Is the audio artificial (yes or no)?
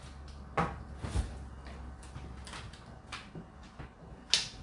no